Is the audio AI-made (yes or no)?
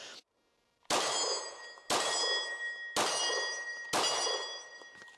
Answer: no